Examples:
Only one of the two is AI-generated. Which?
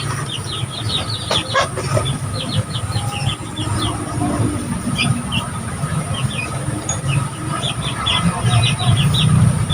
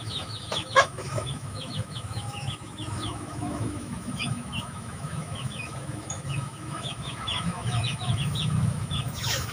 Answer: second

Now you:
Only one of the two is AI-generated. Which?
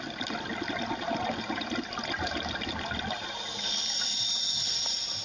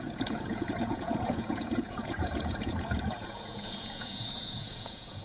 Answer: second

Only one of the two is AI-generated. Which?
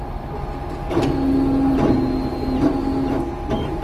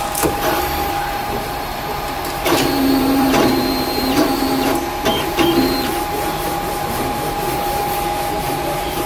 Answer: second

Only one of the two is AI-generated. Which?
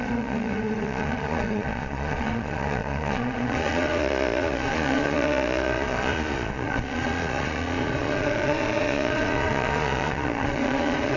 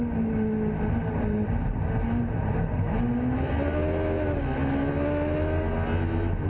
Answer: first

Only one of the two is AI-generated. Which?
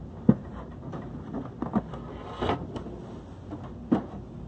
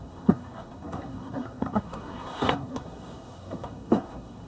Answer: second